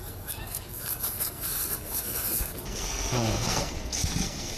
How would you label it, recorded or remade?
remade